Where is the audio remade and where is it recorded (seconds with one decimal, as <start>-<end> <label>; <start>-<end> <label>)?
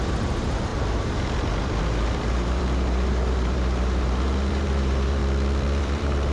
0.0-5.2 remade; 5.2-5.8 recorded; 5.8-6.3 remade